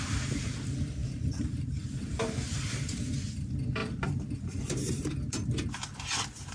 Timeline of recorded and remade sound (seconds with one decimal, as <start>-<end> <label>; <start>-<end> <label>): 0.0-1.0 recorded; 1.0-3.1 remade; 3.1-3.8 recorded; 3.8-5.1 remade; 5.1-6.5 recorded